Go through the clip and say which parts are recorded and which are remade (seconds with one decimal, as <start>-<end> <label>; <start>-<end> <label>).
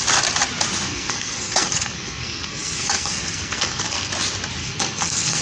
0.0-0.9 recorded; 0.9-4.1 remade; 4.1-4.6 recorded; 4.6-5.4 remade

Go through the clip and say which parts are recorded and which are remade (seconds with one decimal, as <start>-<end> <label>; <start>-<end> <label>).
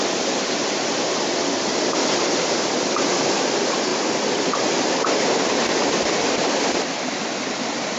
0.0-8.0 recorded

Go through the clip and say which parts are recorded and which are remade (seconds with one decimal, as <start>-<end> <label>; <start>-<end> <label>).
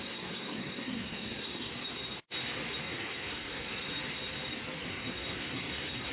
0.0-1.7 remade; 1.7-2.8 recorded; 2.8-3.9 remade; 3.9-4.8 recorded; 4.8-6.1 remade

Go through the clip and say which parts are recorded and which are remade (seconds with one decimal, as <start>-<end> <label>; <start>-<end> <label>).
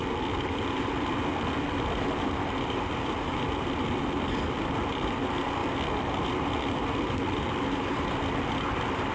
0.0-9.1 recorded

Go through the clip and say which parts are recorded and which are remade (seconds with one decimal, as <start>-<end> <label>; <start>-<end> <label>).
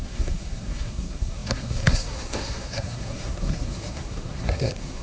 0.0-5.0 remade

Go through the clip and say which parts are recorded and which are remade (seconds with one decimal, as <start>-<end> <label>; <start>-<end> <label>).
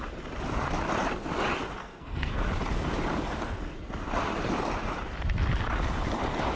0.0-1.8 recorded; 1.8-2.4 remade; 2.4-6.6 recorded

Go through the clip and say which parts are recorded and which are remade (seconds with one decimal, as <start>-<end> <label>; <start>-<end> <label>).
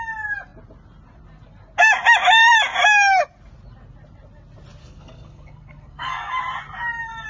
0.0-4.8 recorded; 4.8-6.4 remade; 6.4-7.3 recorded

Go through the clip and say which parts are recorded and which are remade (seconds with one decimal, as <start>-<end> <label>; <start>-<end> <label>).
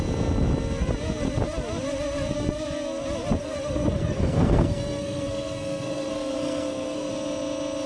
0.0-3.4 recorded; 3.4-7.1 remade; 7.1-7.9 recorded